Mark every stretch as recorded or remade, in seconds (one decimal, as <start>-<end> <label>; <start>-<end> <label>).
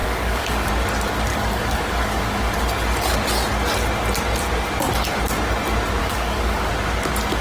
0.0-0.7 remade; 0.7-1.3 recorded; 1.3-2.5 remade; 2.5-6.0 recorded; 6.0-6.7 remade; 6.7-7.4 recorded